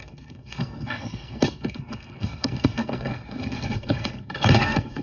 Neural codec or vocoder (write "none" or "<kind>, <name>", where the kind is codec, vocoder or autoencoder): codec, SNAC